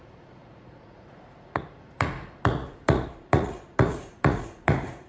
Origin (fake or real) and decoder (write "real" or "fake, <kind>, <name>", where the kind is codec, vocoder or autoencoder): fake, vocoder, Vocos